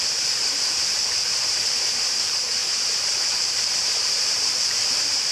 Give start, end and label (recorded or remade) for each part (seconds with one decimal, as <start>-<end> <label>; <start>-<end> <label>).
0.0-5.3 remade